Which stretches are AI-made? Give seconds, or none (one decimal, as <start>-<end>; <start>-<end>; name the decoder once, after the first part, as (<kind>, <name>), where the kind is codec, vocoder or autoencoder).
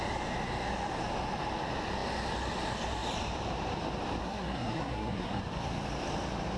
4.2-5.4 (codec, SNAC)